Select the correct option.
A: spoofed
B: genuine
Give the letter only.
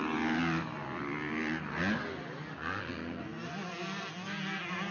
B